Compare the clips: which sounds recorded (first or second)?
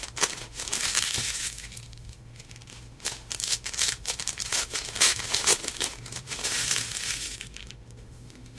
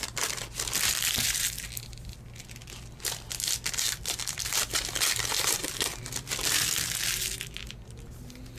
second